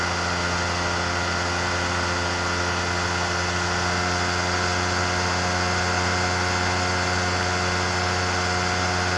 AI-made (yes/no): no